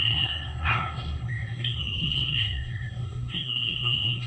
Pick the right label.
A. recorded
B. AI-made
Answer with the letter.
B